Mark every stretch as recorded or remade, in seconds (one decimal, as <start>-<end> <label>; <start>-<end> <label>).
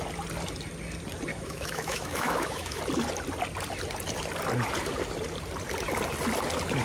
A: 0.0-1.3 recorded; 1.3-2.8 remade; 2.8-6.8 recorded